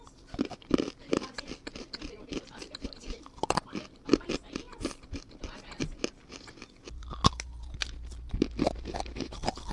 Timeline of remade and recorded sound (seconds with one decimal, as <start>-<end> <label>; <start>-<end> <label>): 0.0-9.7 recorded